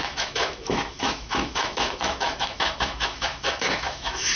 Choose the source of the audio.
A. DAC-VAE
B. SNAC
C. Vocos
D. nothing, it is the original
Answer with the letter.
A